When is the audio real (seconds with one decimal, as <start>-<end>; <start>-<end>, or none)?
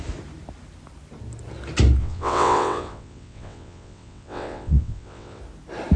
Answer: 0.0-2.0; 5.4-6.0